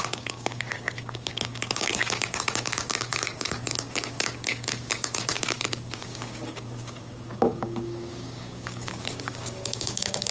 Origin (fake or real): fake